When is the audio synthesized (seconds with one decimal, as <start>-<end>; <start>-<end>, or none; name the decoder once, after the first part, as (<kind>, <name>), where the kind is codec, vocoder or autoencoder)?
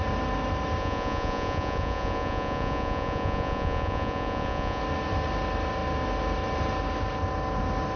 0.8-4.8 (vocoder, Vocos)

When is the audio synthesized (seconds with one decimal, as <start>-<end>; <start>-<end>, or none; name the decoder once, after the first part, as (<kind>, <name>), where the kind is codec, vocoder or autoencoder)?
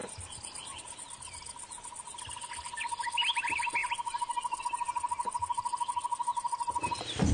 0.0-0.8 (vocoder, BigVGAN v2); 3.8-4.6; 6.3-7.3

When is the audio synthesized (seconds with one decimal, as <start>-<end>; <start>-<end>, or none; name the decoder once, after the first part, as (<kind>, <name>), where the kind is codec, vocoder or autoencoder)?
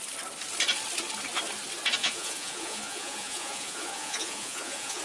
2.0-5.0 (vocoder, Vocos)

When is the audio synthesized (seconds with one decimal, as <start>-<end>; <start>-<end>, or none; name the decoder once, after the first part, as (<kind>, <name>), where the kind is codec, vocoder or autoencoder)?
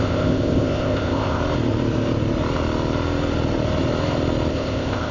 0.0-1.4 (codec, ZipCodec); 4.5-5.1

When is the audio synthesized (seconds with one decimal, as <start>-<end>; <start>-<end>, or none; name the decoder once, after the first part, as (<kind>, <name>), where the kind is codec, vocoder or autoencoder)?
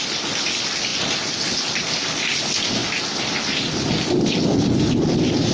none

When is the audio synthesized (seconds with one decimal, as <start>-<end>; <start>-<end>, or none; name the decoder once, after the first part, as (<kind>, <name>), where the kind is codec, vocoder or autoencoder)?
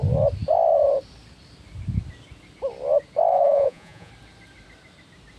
3.3-4.1 (vocoder, Vocos)